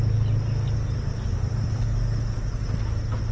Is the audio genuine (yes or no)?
yes